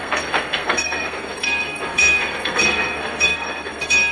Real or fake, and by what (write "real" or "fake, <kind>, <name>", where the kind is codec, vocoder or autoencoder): fake, codec, SNAC